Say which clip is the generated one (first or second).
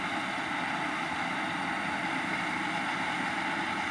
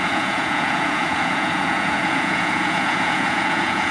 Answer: second